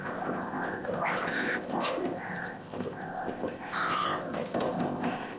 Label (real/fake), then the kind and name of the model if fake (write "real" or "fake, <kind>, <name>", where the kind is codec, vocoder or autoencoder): fake, codec, ZipCodec